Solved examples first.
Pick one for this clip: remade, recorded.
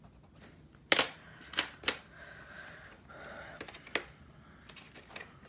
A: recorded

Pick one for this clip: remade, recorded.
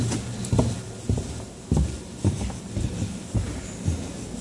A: recorded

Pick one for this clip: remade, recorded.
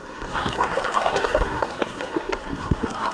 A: remade